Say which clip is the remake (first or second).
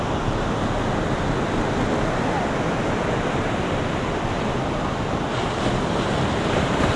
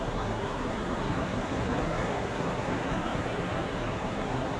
second